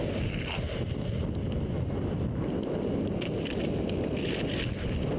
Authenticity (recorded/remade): recorded